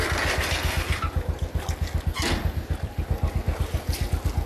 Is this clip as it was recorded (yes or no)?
yes